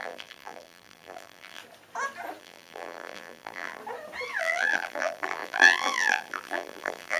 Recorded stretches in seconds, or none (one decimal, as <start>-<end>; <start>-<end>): 1.6-2.4; 3.8-4.4